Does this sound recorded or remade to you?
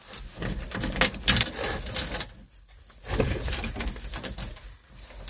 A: recorded